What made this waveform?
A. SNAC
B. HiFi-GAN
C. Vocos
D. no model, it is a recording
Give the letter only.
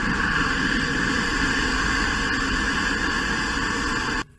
D